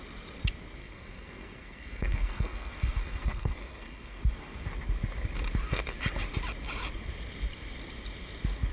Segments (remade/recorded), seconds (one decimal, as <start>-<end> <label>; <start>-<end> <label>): 0.0-0.8 recorded; 0.8-4.2 remade; 4.2-8.7 recorded